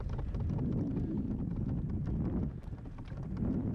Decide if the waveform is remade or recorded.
recorded